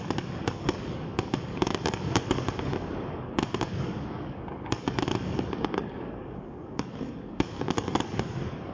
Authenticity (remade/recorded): remade